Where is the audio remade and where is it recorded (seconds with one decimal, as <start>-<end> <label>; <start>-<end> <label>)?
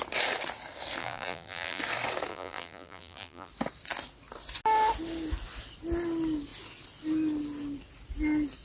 0.0-1.0 recorded; 1.0-1.8 remade; 1.8-2.3 recorded; 2.3-3.5 remade; 3.5-8.6 recorded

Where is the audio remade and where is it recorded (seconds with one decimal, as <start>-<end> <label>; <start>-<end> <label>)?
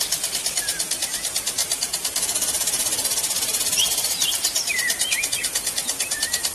0.0-1.6 recorded; 1.6-5.3 remade; 5.3-6.5 recorded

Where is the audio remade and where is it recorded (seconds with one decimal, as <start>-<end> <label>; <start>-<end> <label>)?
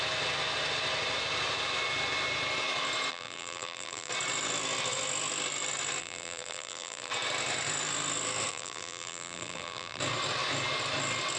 0.0-3.1 recorded; 3.1-4.1 remade; 4.1-6.0 recorded; 6.0-7.1 remade; 7.1-8.5 recorded; 8.5-10.0 remade; 10.0-11.4 recorded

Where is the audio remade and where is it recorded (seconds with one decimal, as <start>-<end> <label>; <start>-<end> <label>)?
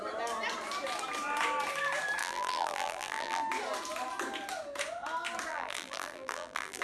0.0-2.2 recorded; 2.2-3.4 remade; 3.4-5.5 recorded; 5.5-6.8 remade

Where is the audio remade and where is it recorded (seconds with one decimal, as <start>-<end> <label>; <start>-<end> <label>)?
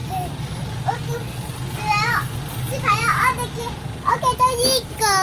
0.0-5.2 recorded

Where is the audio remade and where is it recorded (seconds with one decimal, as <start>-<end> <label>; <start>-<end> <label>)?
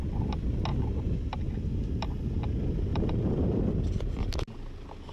0.0-0.7 recorded; 0.7-1.4 remade; 1.4-2.9 recorded; 2.9-3.8 remade; 3.8-5.1 recorded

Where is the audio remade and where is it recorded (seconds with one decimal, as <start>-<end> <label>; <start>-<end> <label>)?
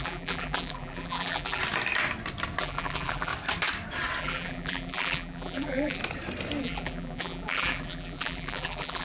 0.0-1.6 remade; 1.6-2.6 recorded; 2.6-3.3 remade; 3.3-4.2 recorded; 4.2-6.0 remade; 6.0-6.6 recorded; 6.6-9.0 remade